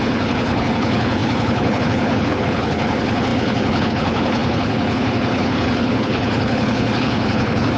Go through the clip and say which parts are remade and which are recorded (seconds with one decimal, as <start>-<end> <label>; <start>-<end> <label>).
0.0-7.8 remade